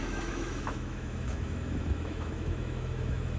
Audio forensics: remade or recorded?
remade